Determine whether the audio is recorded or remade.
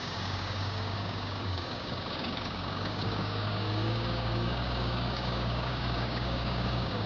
remade